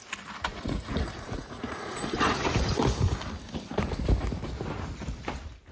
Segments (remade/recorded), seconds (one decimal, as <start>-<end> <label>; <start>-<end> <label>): 0.0-0.5 recorded; 0.5-2.5 remade; 2.5-5.7 recorded